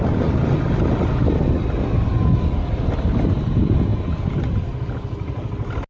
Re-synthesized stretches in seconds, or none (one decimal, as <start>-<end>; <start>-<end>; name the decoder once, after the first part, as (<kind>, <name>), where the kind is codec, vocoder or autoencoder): none